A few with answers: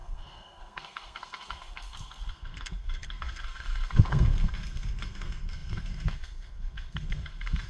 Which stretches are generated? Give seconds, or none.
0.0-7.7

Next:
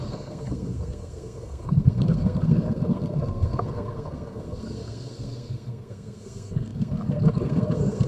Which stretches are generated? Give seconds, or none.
0.0-8.1